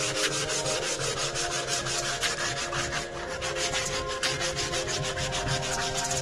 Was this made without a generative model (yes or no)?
yes